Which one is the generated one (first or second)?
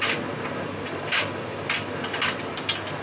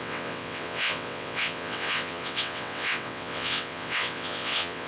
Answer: second